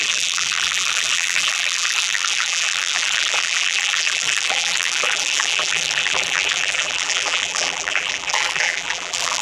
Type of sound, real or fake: fake